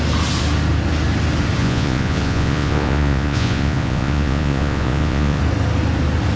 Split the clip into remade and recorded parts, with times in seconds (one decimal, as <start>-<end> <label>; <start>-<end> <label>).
0.0-1.6 recorded; 1.6-5.4 remade; 5.4-6.4 recorded